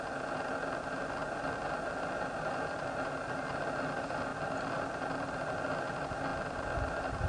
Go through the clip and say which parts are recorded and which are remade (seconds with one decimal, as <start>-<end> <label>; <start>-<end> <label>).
0.0-7.3 recorded